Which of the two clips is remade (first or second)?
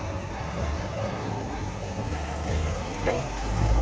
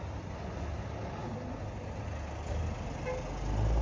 first